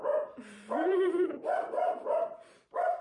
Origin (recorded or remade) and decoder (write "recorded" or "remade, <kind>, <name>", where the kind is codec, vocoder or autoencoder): remade, vocoder, BigVGAN v2